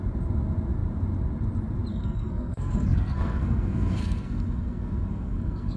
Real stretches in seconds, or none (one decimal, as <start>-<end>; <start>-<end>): 0.0-1.9